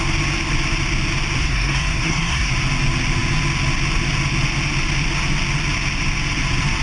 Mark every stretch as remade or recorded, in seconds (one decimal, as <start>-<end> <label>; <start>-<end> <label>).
0.0-1.4 recorded; 1.4-2.5 remade; 2.5-6.8 recorded